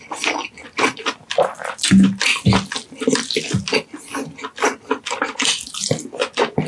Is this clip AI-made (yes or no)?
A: no